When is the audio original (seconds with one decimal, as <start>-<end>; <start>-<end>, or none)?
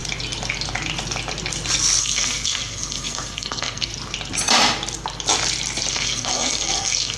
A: 0.0-2.0; 3.9-5.9